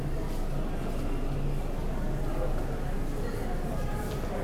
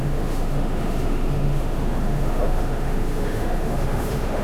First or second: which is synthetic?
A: second